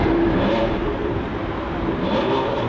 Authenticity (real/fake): fake